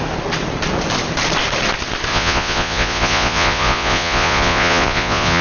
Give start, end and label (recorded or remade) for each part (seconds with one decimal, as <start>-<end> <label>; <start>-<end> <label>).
0.0-2.1 recorded; 2.1-5.4 remade